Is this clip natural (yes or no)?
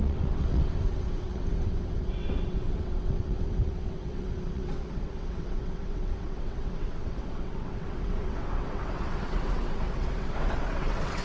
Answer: no